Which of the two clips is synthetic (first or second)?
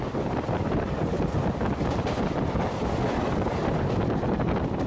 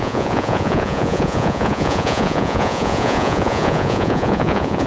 second